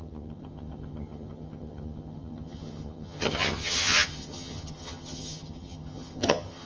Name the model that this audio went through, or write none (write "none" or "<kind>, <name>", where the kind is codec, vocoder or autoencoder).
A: vocoder, HiFi-GAN